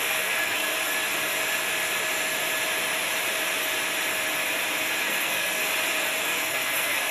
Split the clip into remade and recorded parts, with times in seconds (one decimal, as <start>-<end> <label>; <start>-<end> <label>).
0.0-0.7 remade; 0.7-5.0 recorded; 5.0-5.6 remade; 5.6-6.2 recorded; 6.2-7.1 remade